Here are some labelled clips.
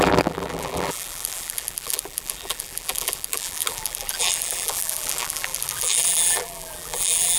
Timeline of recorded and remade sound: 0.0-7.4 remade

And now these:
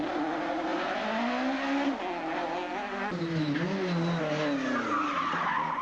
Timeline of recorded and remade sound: 0.0-5.8 recorded

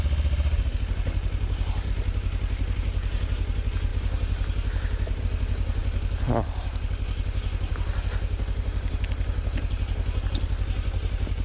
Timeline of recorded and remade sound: 0.0-11.4 recorded

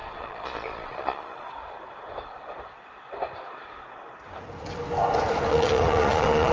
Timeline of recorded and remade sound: 0.0-1.8 remade; 1.8-5.5 recorded; 5.5-6.5 remade

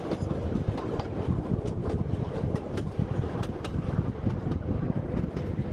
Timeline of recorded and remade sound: 0.0-1.8 recorded; 1.8-5.2 remade; 5.2-5.7 recorded

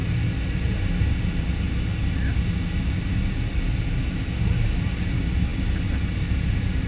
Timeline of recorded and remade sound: 0.0-6.9 recorded